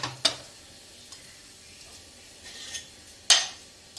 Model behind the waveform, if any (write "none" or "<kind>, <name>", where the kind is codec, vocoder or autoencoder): none